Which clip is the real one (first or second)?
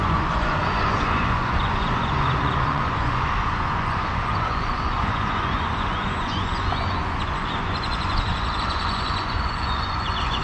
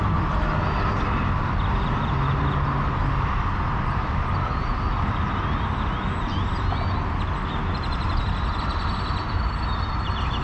second